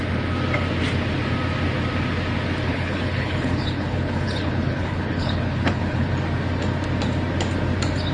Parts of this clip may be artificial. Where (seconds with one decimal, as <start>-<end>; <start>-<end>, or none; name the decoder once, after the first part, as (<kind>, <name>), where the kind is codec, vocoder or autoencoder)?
2.7-6.1 (codec, HILCodec)

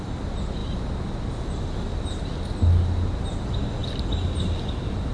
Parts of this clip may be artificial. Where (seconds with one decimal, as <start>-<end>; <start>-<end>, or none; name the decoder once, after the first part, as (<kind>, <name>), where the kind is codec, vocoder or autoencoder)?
none

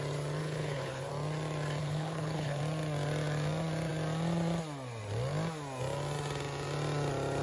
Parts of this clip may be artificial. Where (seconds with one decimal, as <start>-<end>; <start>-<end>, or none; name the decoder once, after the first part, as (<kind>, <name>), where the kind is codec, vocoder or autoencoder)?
0.4-1.1 (codec, HILCodec); 1.8-2.6